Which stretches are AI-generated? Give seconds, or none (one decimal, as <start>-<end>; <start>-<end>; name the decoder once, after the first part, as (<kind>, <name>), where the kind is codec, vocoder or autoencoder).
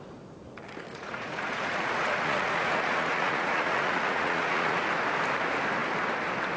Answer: 0.9-4.9 (vocoder, Vocos)